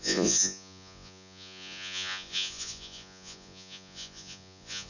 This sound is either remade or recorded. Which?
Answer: remade